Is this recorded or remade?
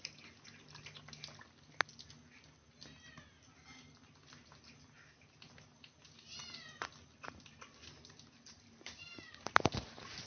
recorded